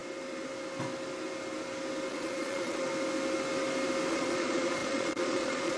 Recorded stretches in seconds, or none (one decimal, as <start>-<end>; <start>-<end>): 0.0-2.1; 2.9-4.1